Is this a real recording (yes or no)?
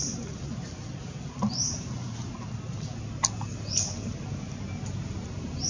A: yes